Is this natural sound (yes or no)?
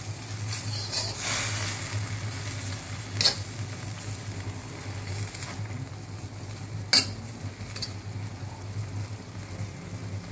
yes